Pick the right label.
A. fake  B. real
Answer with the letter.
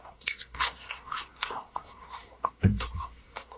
A